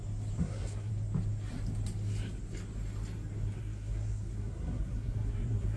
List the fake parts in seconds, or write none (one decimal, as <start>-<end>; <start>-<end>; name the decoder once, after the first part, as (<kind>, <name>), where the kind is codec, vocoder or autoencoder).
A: 0.4-0.9 (codec, SNAC); 3.6-5.8